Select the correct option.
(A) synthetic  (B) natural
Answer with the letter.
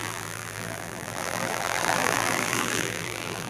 A